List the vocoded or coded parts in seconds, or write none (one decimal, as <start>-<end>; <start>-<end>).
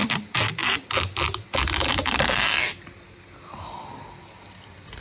none